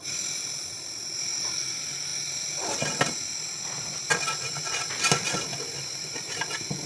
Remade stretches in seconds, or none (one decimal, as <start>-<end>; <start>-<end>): none